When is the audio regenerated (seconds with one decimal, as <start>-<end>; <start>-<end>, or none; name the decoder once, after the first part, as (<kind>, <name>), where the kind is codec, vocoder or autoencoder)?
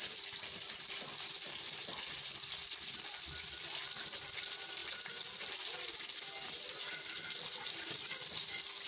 none